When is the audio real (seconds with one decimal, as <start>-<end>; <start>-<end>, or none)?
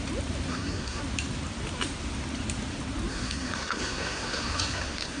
0.0-0.5; 1.0-3.1